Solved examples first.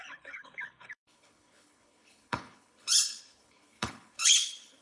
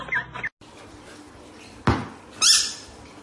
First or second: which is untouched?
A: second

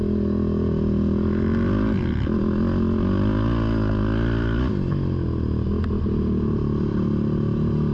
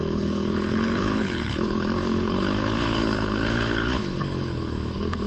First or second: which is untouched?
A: first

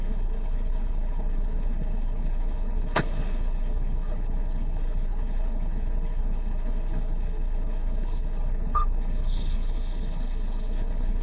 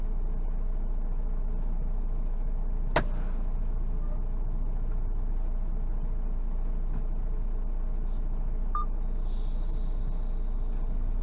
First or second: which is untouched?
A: second